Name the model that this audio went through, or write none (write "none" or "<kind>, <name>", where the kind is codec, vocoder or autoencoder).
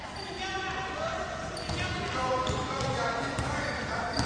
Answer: none